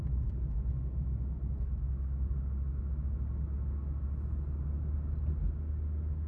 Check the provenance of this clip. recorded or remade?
recorded